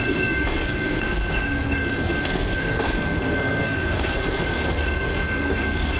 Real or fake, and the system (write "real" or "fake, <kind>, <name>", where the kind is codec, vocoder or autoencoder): fake, codec, SNAC